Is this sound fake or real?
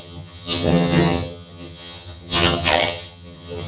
fake